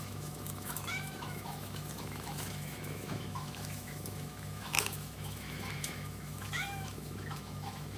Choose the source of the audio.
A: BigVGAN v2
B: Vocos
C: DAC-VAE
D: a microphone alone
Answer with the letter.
C